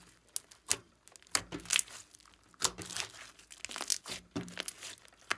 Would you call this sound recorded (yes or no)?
yes